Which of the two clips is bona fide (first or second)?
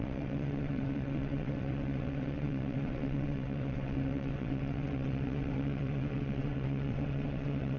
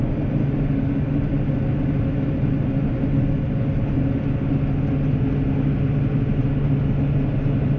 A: second